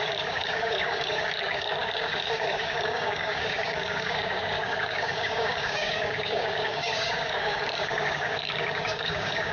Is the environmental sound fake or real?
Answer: fake